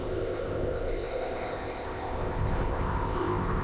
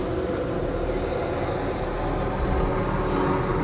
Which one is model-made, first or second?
first